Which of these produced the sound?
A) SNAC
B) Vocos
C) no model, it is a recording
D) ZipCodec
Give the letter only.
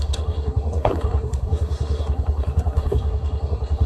A